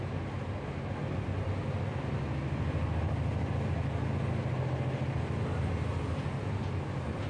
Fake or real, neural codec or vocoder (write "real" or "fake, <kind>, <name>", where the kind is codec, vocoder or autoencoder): real